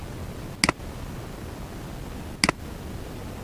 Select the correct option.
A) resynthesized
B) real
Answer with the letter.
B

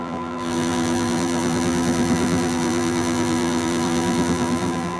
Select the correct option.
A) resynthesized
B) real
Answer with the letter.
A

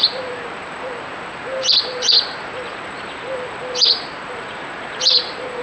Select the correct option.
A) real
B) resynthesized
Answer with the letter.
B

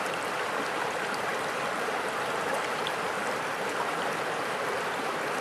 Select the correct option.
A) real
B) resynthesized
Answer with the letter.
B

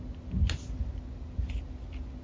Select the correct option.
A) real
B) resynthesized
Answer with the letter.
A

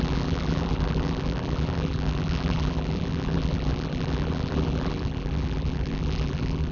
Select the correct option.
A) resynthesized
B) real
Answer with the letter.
A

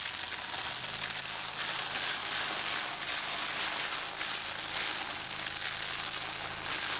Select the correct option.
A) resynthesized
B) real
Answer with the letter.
B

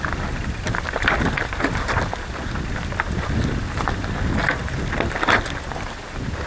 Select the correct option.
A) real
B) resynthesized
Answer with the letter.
A